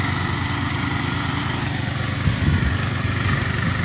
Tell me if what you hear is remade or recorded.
recorded